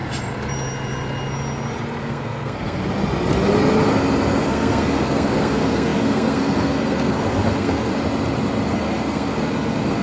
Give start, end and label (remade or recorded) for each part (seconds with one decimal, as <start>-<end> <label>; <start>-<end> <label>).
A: 0.0-2.0 recorded; 2.0-2.8 remade; 2.8-4.4 recorded; 4.4-7.9 remade; 7.9-8.7 recorded; 8.7-10.0 remade